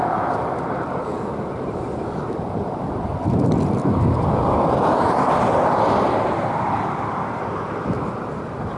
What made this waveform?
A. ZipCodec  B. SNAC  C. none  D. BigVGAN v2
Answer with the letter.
D